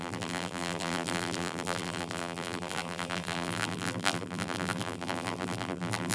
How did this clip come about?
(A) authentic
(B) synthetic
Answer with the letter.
B